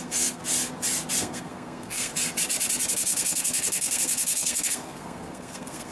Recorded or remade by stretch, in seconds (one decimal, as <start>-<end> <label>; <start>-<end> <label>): 0.0-0.4 remade; 0.4-1.2 recorded; 1.2-2.1 remade; 2.1-2.9 recorded; 2.9-5.9 remade